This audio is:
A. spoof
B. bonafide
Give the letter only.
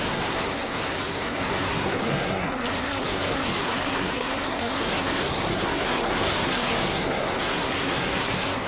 A